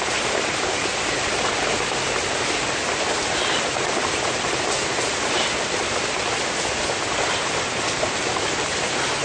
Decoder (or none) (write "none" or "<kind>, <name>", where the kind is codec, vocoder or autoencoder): none